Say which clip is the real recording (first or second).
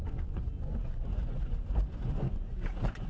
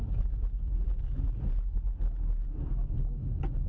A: second